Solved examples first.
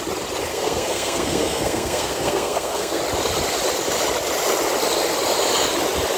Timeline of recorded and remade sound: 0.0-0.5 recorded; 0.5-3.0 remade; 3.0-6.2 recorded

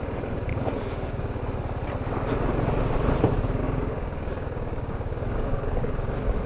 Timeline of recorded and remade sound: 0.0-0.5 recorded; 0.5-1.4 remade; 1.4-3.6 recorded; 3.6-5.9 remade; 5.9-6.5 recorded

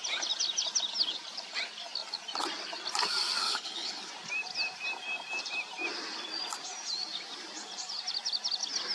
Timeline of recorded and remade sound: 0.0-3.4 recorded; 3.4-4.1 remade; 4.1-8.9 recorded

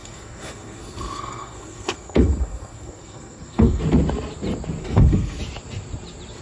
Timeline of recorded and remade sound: 0.0-3.8 remade; 3.8-4.8 recorded; 4.8-5.4 remade; 5.4-6.4 recorded

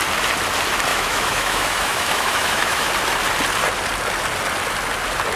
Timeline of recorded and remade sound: 0.0-0.9 recorded; 0.9-2.9 remade; 2.9-5.4 recorded